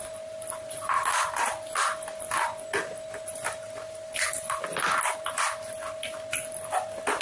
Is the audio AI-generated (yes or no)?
no